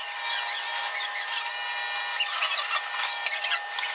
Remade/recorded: recorded